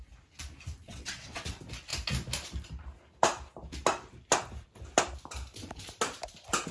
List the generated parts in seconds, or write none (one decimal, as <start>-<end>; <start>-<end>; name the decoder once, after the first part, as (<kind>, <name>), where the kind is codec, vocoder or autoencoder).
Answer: 0.8-1.5 (vocoder, WaveNeXt)